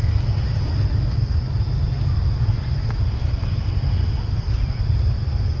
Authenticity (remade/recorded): recorded